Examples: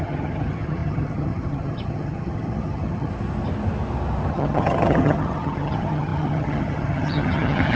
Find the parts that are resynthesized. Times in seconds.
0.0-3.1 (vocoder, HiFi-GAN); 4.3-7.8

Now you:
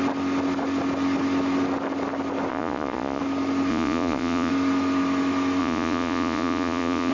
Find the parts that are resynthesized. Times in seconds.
2.5-3.2 (vocoder, Vocos); 3.7-4.5; 5.6-7.1